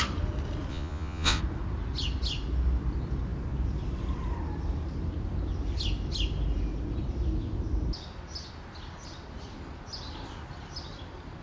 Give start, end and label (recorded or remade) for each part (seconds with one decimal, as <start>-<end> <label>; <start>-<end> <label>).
0.0-0.7 recorded; 0.7-1.4 remade; 1.4-11.4 recorded